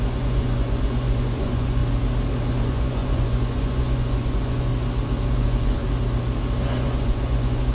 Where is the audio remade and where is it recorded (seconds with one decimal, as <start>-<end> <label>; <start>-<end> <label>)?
0.0-1.8 remade; 1.8-2.5 recorded; 2.5-4.7 remade; 4.7-5.3 recorded; 5.3-5.8 remade; 5.8-6.6 recorded; 6.6-7.7 remade